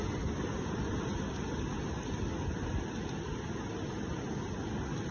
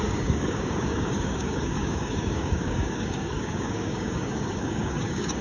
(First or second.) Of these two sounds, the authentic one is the first